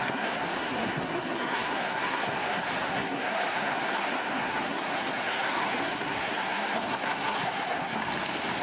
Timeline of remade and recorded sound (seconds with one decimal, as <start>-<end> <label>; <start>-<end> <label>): 0.0-8.0 remade; 8.0-8.6 recorded